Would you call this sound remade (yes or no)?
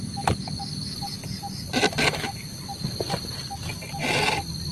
no